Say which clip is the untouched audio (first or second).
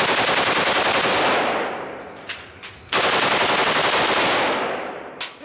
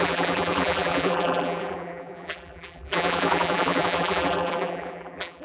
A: first